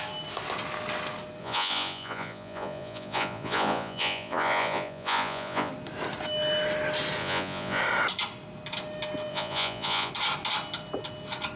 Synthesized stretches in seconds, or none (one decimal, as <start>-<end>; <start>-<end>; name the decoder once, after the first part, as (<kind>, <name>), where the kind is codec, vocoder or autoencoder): 1.4-5.7 (vocoder, Vocos); 7.2-7.8; 9.3-10.1